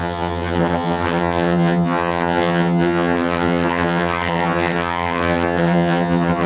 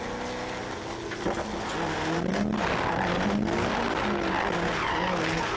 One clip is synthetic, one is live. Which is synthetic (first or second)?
first